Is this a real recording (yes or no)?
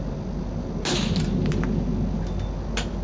yes